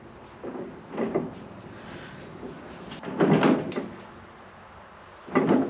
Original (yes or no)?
yes